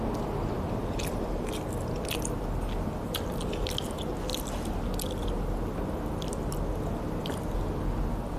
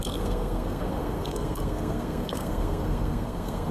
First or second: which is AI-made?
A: second